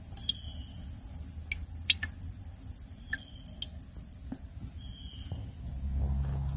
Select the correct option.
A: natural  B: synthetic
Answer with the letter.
A